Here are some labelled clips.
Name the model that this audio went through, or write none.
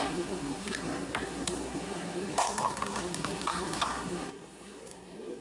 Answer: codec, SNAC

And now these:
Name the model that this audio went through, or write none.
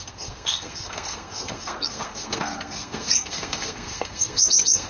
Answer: codec, SNAC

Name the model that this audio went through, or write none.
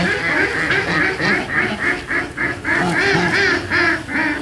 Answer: none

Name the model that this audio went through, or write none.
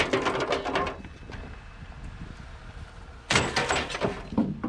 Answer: none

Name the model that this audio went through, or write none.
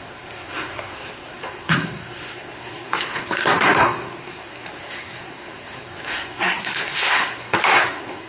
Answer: codec, SNAC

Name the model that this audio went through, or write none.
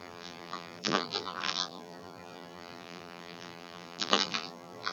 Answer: vocoder, BigVGAN v2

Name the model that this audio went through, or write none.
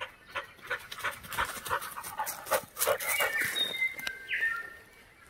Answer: none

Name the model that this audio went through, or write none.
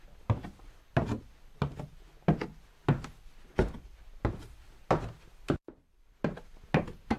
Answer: none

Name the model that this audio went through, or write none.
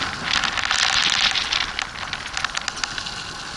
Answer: none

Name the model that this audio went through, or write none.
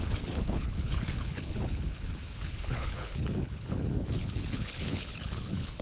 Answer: codec, HILCodec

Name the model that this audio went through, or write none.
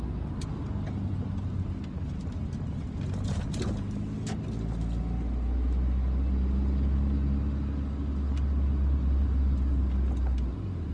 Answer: none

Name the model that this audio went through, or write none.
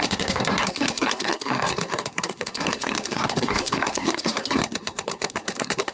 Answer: codec, SNAC